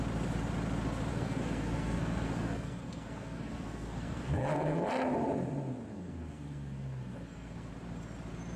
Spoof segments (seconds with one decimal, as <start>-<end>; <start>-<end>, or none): 1.1-4.9; 5.9-7.7